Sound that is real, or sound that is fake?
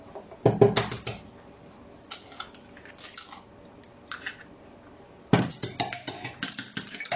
real